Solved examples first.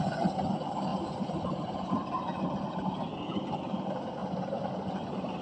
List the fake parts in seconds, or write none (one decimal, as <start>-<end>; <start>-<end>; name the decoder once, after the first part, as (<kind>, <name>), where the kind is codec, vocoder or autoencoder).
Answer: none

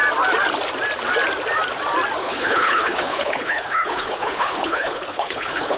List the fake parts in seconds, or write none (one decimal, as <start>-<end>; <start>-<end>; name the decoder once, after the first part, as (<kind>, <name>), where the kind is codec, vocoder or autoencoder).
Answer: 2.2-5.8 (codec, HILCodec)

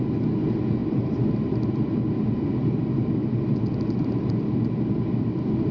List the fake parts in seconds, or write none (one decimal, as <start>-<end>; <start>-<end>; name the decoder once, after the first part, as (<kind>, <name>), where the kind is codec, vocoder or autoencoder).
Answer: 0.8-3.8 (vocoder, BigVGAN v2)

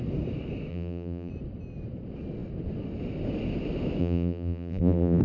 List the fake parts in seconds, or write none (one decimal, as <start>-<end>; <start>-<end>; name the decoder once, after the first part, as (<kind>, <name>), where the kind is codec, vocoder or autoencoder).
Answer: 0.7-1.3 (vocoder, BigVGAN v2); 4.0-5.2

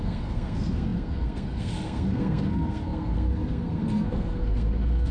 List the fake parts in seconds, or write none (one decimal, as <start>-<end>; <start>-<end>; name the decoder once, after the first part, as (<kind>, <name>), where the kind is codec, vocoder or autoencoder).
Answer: 0.0-5.1 (codec, SNAC)